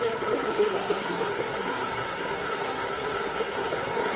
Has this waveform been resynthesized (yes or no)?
yes